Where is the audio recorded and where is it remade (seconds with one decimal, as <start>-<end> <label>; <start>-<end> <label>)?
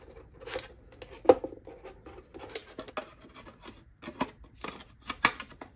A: 0.0-5.8 recorded